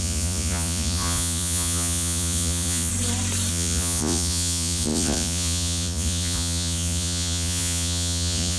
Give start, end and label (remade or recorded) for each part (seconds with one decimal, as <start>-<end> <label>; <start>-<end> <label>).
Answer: 0.0-2.9 remade; 2.9-3.5 recorded; 3.5-8.6 remade